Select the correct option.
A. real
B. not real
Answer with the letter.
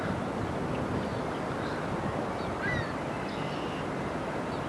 A